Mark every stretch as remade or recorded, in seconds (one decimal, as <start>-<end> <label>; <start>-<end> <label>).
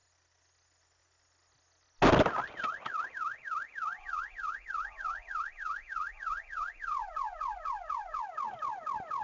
0.0-4.0 recorded; 4.0-8.2 remade; 8.2-9.2 recorded